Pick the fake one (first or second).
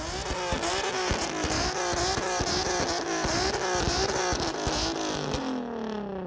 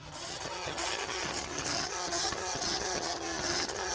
second